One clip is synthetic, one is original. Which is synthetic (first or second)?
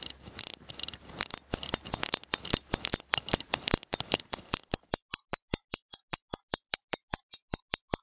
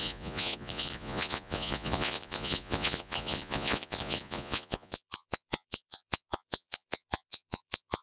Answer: second